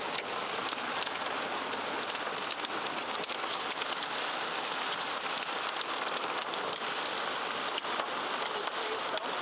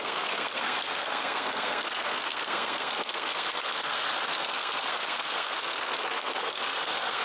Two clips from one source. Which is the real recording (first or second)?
first